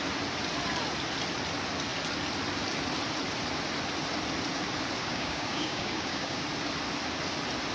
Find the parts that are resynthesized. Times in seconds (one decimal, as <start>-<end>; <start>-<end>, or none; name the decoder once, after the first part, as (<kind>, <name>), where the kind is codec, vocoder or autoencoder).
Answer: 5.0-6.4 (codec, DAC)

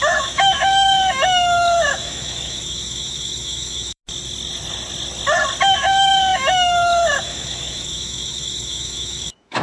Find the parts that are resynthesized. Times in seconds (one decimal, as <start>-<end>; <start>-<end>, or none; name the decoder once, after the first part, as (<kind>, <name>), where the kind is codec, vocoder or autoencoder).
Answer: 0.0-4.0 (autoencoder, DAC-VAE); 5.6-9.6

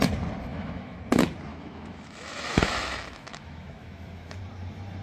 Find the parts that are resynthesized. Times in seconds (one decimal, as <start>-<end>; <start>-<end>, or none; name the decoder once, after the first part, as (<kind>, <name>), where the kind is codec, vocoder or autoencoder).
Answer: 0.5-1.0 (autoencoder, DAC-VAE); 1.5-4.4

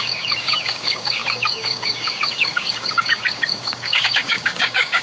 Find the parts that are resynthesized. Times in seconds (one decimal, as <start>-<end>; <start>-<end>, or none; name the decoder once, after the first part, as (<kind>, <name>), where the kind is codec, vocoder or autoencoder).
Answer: 0.0-5.0 (codec, DAC)

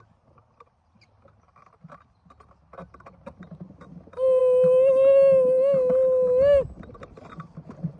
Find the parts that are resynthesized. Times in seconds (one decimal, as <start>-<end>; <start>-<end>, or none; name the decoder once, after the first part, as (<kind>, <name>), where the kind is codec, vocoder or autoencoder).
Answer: none